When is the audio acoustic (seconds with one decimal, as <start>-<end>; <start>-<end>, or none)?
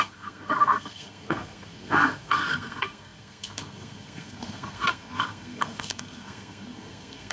none